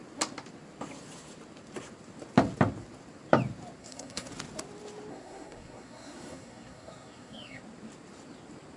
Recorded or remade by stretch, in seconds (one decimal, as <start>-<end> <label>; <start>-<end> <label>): 0.0-3.8 recorded; 3.8-4.3 remade; 4.3-5.1 recorded; 5.1-7.6 remade; 7.6-8.8 recorded